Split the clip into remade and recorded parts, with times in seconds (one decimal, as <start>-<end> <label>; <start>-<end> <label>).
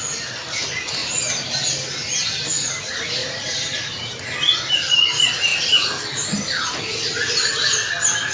0.0-1.0 recorded; 1.0-2.5 remade; 2.5-3.2 recorded; 3.2-4.2 remade; 4.2-8.3 recorded